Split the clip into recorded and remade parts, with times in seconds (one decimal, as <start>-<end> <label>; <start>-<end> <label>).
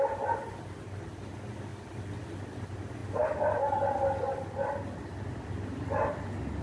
0.0-3.0 recorded; 3.0-3.6 remade; 3.6-6.6 recorded